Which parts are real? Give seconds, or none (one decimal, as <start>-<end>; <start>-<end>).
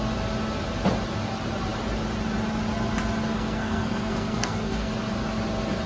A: 0.0-3.3; 4.9-5.9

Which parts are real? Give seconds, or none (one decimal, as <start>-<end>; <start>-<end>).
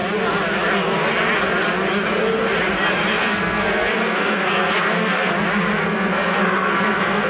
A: 0.0-3.2; 5.3-5.8